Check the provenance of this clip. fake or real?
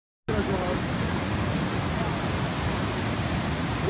real